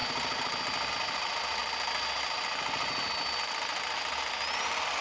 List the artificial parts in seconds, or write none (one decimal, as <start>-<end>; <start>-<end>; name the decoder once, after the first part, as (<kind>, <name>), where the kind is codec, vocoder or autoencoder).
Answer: none